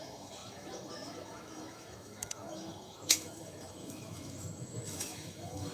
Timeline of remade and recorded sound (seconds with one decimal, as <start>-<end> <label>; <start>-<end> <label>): 0.0-5.7 remade